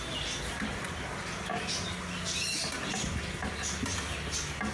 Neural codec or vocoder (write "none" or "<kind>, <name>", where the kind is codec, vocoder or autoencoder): none